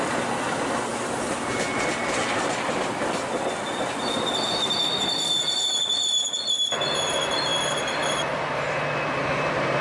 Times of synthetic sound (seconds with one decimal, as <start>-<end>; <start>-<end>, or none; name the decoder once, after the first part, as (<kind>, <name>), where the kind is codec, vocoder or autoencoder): none

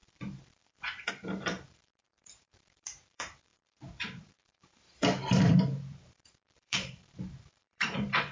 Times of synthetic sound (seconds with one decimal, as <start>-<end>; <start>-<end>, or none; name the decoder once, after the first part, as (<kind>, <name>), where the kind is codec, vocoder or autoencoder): 0.0-8.3 (vocoder, BigVGAN v2)

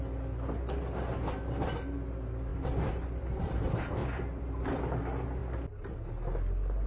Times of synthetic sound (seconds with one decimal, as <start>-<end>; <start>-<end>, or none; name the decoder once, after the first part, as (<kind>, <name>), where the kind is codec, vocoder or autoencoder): 2.5-3.6 (vocoder, BigVGAN v2); 4.0-4.8

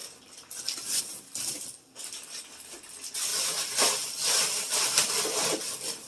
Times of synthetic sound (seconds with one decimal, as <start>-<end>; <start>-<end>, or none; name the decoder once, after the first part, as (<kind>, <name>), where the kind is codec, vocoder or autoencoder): 0.0-1.0 (vocoder, BigVGAN v2)

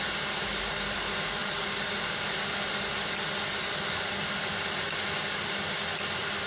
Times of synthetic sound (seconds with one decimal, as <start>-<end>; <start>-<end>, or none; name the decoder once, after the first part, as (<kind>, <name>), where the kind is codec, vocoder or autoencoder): none

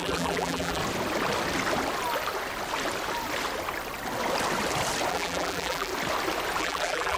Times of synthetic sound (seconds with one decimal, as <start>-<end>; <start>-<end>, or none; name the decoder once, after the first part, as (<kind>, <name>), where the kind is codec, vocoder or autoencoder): 0.0-0.8 (vocoder, BigVGAN v2); 5.1-5.9; 6.6-7.2